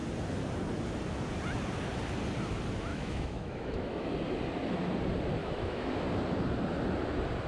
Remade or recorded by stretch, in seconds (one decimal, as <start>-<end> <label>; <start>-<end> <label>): 0.0-2.9 recorded; 2.9-4.1 remade; 4.1-5.4 recorded; 5.4-5.9 remade; 5.9-7.5 recorded